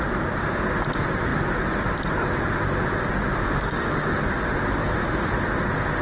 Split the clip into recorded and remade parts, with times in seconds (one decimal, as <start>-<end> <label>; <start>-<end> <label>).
0.0-3.4 recorded; 3.4-4.2 remade; 4.2-4.7 recorded; 4.7-5.3 remade; 5.3-6.0 recorded